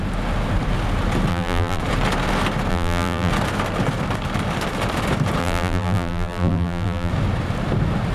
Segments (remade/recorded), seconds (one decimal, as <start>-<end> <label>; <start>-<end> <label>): 0.0-1.3 recorded; 1.3-1.8 remade; 1.8-2.7 recorded; 2.7-3.3 remade; 3.3-5.4 recorded; 5.4-7.1 remade; 7.1-8.1 recorded

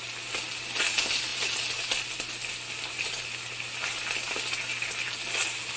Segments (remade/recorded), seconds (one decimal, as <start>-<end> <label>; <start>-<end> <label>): 0.0-5.8 recorded

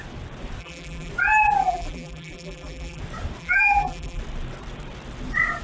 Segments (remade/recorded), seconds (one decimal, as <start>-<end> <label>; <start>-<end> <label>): 0.0-0.6 recorded; 0.6-1.1 remade; 1.1-1.6 recorded; 1.6-3.0 remade; 3.0-3.4 recorded; 3.4-4.2 remade; 4.2-5.6 recorded

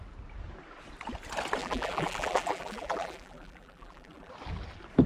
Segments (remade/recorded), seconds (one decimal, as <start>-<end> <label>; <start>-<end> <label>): 0.0-1.6 recorded; 1.6-4.3 remade; 4.3-5.1 recorded

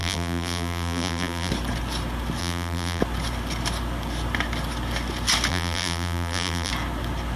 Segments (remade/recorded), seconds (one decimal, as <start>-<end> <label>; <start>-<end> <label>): 0.0-1.5 remade; 1.5-2.4 recorded; 2.4-3.0 remade; 3.0-5.5 recorded; 5.5-6.7 remade; 6.7-7.4 recorded